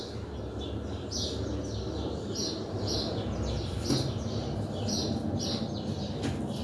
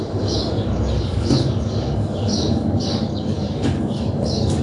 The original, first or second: first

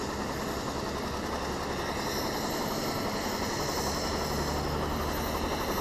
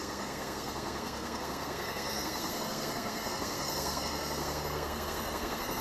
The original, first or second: first